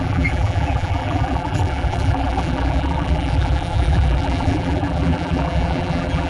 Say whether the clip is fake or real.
fake